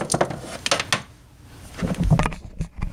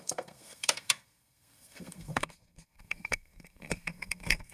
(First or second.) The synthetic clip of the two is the second